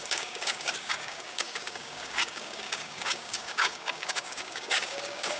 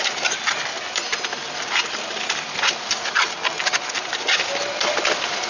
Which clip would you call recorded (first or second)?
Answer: second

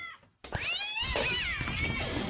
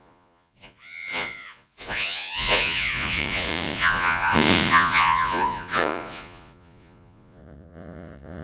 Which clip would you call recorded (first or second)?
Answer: first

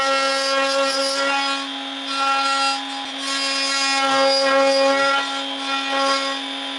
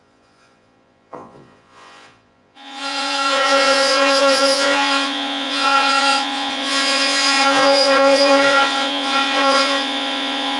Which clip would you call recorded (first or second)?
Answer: first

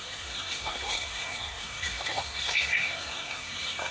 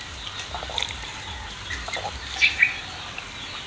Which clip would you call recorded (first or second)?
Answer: second